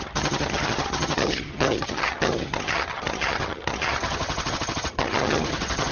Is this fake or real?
fake